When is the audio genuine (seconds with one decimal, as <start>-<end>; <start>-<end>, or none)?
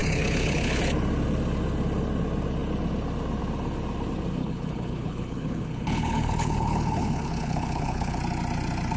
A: 0.8-4.4; 8.2-9.0